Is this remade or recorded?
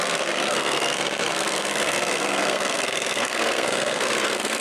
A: remade